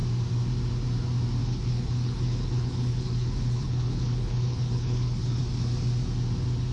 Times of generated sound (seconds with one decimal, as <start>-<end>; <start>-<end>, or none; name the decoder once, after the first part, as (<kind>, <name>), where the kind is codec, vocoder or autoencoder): 1.4-5.4 (codec, HILCodec)